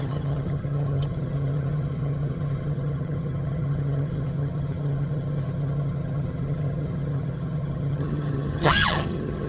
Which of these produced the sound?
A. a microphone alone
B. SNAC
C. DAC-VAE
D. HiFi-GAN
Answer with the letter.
D